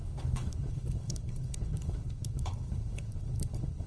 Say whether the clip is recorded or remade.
remade